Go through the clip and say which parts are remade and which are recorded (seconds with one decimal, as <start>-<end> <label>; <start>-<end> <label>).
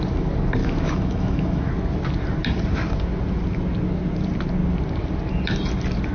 0.0-0.6 recorded; 0.6-1.7 remade; 1.7-6.1 recorded